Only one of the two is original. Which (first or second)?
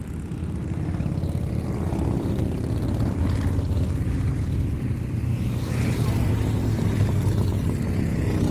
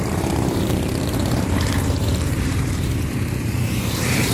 first